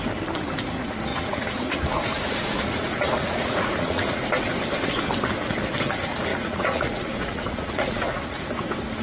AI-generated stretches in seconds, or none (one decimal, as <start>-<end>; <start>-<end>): 1.1-4.3; 6.3-8.4